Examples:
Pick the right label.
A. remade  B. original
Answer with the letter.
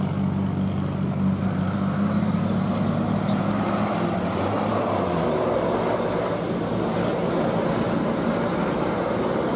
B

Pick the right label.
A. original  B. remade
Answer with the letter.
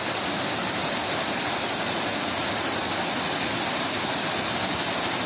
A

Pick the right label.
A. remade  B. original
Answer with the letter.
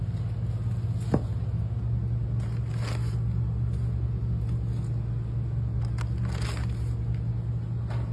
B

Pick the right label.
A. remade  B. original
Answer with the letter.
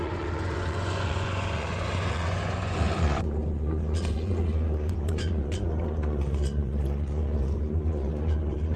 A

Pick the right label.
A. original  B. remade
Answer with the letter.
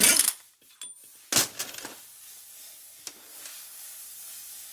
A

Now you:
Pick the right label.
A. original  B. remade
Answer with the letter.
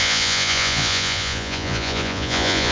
B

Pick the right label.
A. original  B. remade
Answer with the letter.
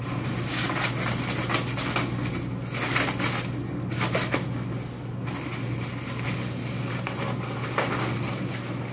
A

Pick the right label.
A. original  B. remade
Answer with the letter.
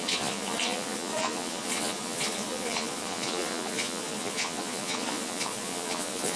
B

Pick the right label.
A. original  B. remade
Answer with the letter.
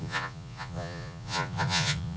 B